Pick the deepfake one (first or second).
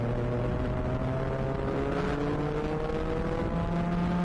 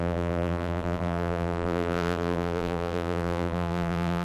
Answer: second